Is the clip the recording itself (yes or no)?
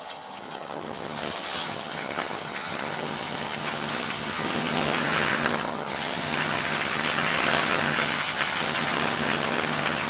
no